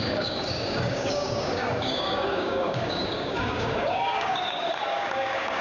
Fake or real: fake